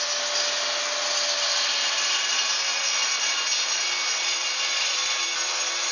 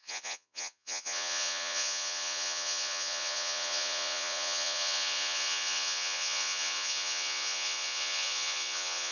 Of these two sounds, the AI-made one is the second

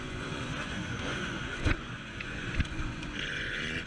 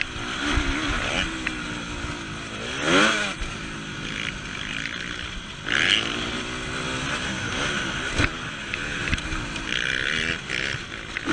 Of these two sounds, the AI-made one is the first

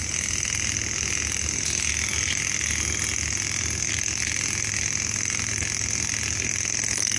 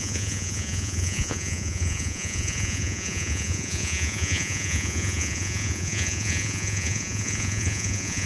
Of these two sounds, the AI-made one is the second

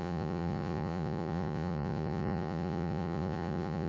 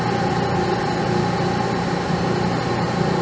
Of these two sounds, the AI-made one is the first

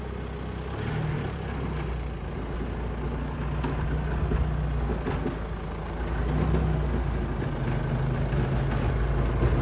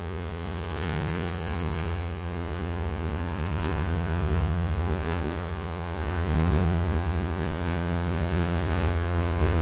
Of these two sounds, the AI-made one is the second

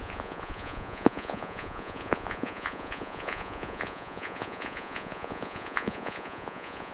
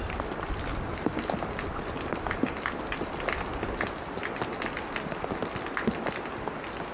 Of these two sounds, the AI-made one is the first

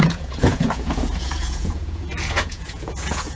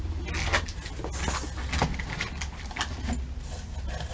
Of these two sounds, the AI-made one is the first